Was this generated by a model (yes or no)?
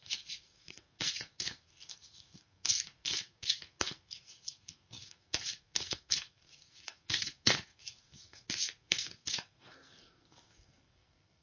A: yes